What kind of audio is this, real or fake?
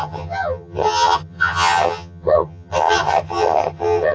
fake